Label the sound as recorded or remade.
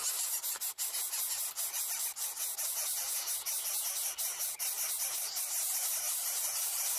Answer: recorded